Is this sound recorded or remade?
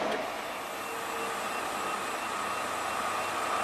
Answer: recorded